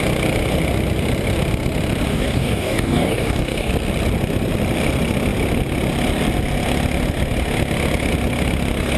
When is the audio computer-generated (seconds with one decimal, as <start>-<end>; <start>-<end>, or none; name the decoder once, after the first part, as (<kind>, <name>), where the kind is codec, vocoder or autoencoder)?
2.1-3.7 (codec, DAC)